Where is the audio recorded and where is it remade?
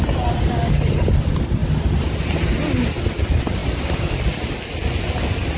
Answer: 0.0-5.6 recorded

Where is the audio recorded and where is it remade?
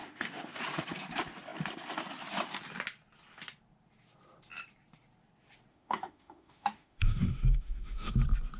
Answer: 0.0-0.6 remade; 0.6-5.7 recorded; 5.7-8.1 remade; 8.1-8.6 recorded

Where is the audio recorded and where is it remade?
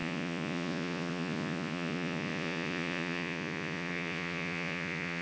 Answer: 0.0-5.2 remade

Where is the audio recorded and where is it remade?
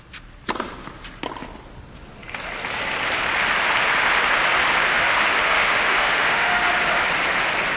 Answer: 0.0-4.9 recorded; 4.9-6.8 remade; 6.8-7.8 recorded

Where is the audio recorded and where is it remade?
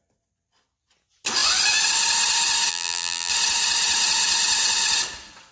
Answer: 0.0-2.7 recorded; 2.7-3.3 remade; 3.3-5.5 recorded